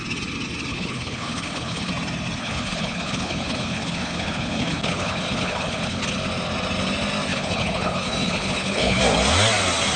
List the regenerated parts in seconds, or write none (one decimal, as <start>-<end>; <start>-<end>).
0.7-1.9; 2.4-6.0; 7.3-9.0